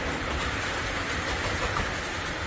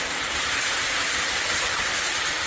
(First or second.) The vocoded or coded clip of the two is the second